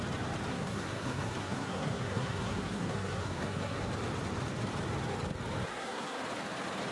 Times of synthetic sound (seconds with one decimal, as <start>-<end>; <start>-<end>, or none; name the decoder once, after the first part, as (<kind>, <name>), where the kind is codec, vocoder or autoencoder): 0.5-3.9 (codec, SNAC); 5.7-6.2